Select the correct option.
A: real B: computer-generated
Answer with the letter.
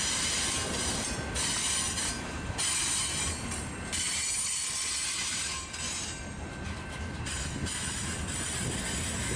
A